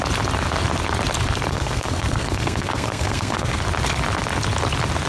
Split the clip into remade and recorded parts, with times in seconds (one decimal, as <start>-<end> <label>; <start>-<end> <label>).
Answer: 0.0-1.5 recorded; 1.5-3.6 remade; 3.6-5.1 recorded